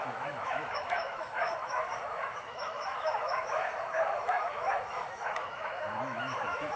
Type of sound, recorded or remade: remade